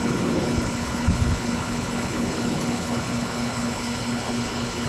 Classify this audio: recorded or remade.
remade